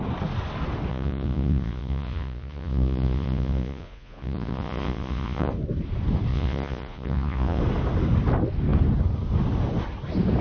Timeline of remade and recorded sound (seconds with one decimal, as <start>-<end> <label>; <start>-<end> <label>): 0.0-0.9 recorded; 0.9-5.5 remade; 5.5-6.3 recorded; 6.3-7.6 remade; 7.6-10.4 recorded